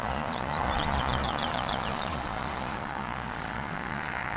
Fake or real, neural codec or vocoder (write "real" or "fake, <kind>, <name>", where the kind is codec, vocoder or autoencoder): fake, vocoder, Vocos